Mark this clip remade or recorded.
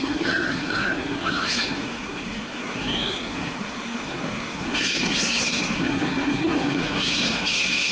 remade